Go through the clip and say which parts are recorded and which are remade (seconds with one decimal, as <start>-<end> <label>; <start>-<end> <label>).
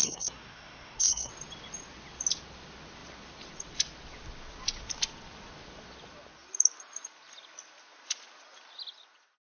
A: 0.0-1.3 remade; 1.3-9.5 recorded